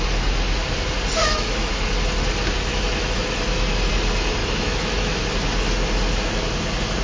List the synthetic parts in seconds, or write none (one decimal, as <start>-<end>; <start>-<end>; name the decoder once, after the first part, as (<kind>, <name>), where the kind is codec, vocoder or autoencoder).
1.2-1.7 (autoencoder, DAC-VAE); 2.7-3.9; 4.4-5.3